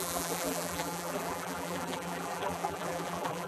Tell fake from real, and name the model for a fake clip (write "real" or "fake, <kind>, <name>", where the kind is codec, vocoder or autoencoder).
fake, vocoder, BigVGAN v2